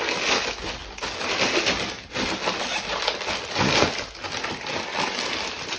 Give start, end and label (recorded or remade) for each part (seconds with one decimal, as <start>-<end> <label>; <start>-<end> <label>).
0.0-5.8 recorded